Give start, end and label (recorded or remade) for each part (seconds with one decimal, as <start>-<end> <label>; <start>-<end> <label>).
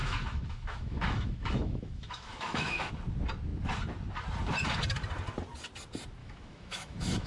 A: 0.0-2.9 remade; 2.9-6.2 recorded; 6.2-7.3 remade